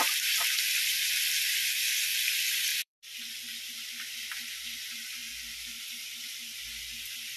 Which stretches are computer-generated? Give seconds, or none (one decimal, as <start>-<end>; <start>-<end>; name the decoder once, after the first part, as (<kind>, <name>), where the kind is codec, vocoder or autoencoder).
2.7-4.1 (vocoder, BigVGAN v2); 5.2-6.1